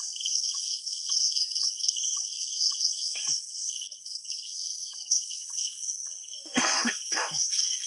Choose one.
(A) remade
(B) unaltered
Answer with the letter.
A